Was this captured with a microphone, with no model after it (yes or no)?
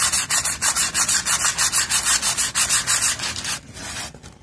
yes